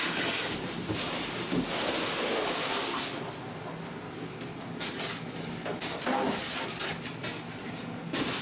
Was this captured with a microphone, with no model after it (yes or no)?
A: yes